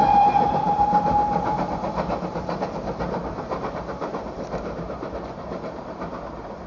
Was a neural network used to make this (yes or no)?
yes